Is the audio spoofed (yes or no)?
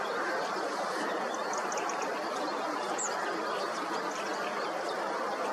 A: no